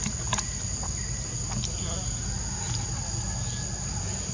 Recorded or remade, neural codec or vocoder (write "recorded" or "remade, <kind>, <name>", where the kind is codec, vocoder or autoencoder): recorded